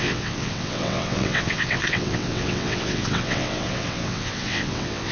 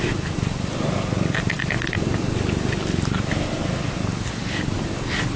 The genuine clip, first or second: second